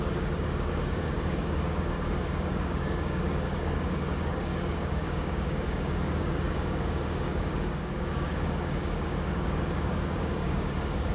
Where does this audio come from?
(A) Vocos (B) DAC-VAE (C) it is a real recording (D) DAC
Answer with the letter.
D